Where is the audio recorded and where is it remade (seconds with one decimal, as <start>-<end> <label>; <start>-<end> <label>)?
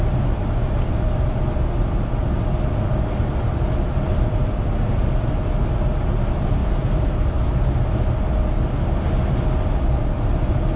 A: 0.0-6.6 recorded; 6.6-8.0 remade; 8.0-10.8 recorded